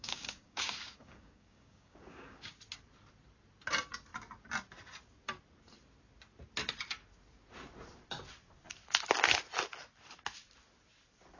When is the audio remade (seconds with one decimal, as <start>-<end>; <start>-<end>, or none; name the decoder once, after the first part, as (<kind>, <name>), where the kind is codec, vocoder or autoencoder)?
0.0-2.6 (codec, DAC)